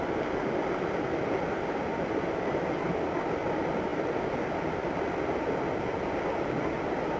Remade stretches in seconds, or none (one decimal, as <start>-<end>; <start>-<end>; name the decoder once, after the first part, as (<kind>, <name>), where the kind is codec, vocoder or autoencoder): none